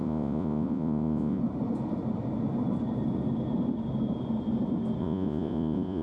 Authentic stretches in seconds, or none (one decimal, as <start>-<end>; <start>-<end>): 1.4-5.0